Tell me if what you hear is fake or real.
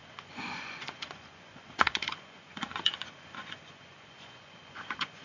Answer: fake